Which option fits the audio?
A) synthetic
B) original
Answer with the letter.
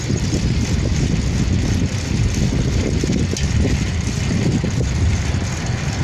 B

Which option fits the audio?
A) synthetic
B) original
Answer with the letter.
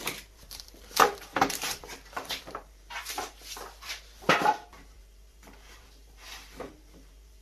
A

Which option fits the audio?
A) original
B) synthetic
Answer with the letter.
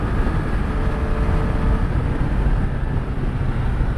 A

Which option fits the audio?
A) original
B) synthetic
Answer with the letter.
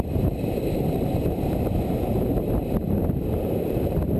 B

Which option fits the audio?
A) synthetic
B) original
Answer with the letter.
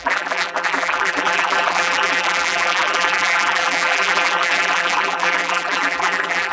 A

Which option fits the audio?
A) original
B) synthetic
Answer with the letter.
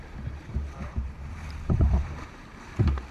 B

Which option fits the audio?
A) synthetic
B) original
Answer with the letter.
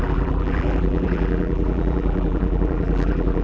A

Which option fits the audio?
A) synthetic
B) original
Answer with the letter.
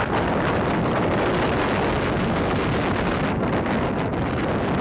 B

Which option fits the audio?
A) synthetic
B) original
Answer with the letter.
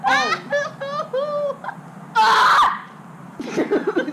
B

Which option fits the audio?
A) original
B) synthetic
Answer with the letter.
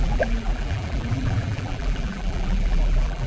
B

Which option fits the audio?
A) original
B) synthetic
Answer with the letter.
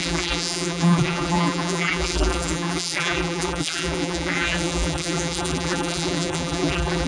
B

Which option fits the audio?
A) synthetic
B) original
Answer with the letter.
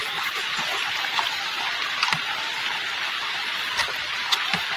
A